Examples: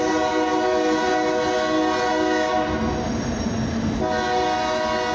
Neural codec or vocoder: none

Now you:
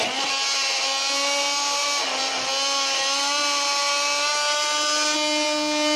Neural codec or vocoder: none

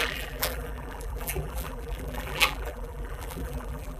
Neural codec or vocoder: vocoder, BigVGAN v2